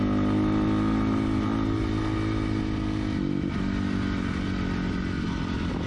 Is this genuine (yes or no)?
yes